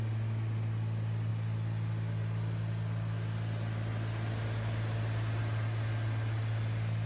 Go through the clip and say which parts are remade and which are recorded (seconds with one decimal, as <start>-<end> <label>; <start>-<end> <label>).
0.0-7.1 recorded